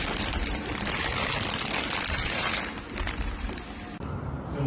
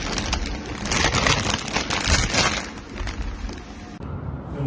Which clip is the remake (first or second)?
first